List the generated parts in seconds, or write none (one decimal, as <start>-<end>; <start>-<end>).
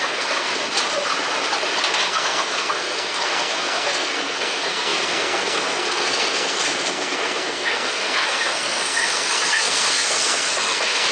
0.0-0.5; 2.0-11.1